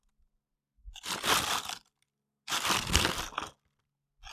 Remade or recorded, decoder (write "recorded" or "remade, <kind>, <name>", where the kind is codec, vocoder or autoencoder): recorded